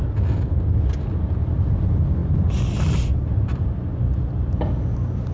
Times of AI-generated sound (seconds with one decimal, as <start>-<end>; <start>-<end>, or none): 2.2-4.8